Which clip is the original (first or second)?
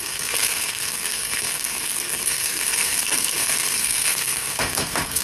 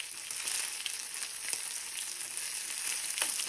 second